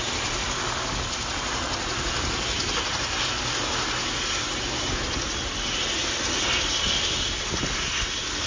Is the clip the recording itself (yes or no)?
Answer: yes